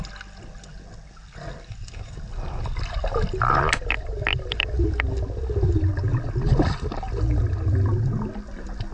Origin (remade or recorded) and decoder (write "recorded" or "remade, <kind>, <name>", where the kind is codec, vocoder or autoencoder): recorded